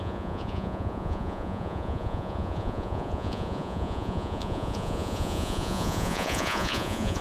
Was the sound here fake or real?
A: fake